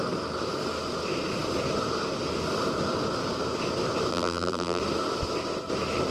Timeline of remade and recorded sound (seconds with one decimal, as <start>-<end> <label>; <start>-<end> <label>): 0.0-4.1 recorded; 4.1-4.8 remade; 4.8-6.1 recorded